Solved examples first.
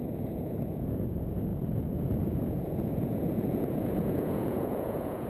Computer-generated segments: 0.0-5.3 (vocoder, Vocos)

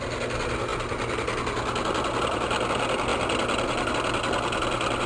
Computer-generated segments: none

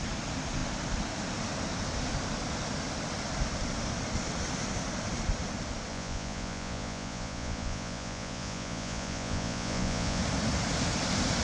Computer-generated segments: 5.9-10.2 (vocoder, Vocos)

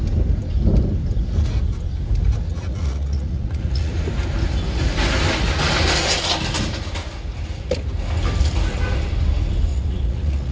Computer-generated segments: 2.5-3.9 (vocoder, Vocos); 9.7-10.5

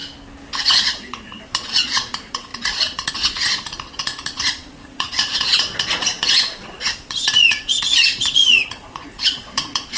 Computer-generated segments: 0.6-10.0 (vocoder, Vocos)

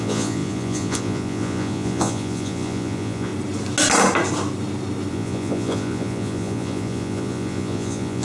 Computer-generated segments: 0.0-3.3 (vocoder, Vocos); 5.1-8.2

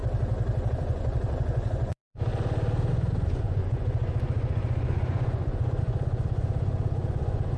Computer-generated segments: 0.7-2.3 (vocoder, Vocos); 2.9-7.6

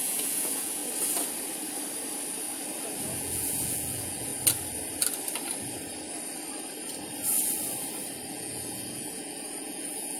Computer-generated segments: 0.0-0.8 (vocoder, Vocos); 3.0-4.3; 8.3-10.2